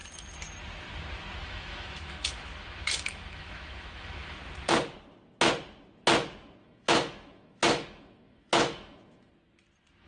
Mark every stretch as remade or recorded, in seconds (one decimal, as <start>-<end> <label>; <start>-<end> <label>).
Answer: 0.0-1.4 recorded; 1.4-4.3 remade; 4.3-6.6 recorded; 6.6-9.3 remade; 9.3-10.1 recorded